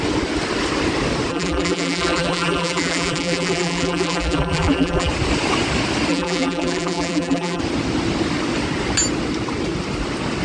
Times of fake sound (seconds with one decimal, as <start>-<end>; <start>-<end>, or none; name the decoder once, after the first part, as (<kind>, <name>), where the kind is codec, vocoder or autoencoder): 1.3-5.1 (vocoder, BigVGAN v2); 6.1-7.6